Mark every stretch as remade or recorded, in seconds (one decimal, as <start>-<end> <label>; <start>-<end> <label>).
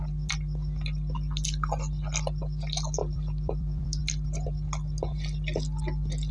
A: 0.0-3.0 recorded; 3.0-4.0 remade; 4.0-6.3 recorded